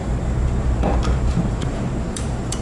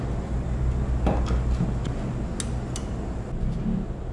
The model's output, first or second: first